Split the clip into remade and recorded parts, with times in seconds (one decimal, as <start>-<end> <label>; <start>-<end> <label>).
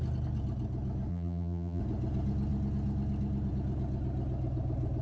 0.0-1.1 recorded; 1.1-1.8 remade; 1.8-5.0 recorded